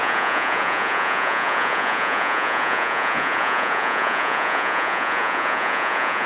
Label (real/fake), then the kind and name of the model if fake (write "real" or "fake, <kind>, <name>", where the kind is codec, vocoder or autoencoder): fake, vocoder, Vocos